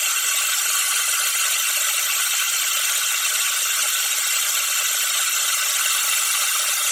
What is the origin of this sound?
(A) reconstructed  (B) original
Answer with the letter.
B